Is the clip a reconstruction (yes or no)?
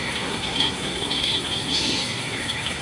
yes